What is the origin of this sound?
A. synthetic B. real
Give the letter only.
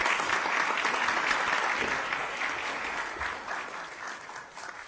B